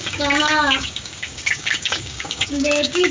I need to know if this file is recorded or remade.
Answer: remade